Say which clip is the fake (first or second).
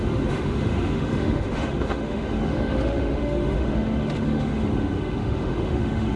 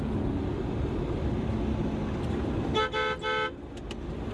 first